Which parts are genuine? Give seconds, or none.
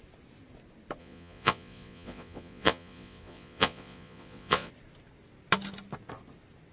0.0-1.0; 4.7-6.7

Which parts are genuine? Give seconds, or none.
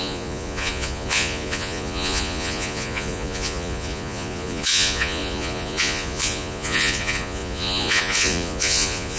none